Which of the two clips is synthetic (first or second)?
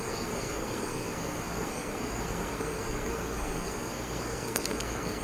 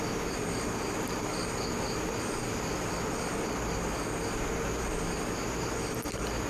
first